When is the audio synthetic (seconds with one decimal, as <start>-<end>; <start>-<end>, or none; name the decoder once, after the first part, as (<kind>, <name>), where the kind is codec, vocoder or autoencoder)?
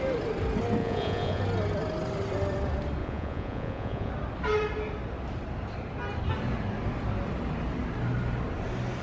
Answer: 0.8-1.4 (vocoder, Vocos); 3.0-4.1